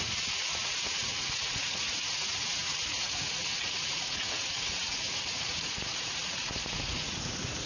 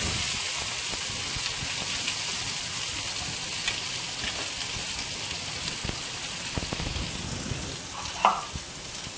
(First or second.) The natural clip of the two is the second